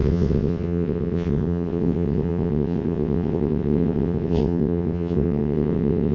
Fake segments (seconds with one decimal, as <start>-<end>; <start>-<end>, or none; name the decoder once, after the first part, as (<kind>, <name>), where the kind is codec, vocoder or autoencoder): 0.0-6.1 (vocoder, WaveNeXt)

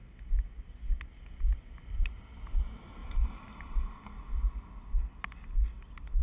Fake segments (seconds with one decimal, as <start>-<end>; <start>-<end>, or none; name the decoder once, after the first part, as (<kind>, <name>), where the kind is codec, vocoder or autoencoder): none

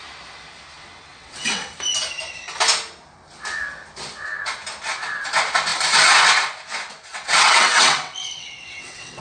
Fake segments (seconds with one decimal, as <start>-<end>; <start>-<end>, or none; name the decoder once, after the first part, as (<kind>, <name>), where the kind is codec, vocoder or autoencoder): 1.1-1.7 (vocoder, WaveNeXt); 7.1-9.2

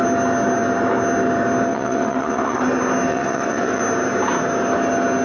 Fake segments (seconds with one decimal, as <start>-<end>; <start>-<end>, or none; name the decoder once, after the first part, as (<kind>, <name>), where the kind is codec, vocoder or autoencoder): 1.7-2.6 (vocoder, WaveNeXt); 3.1-3.8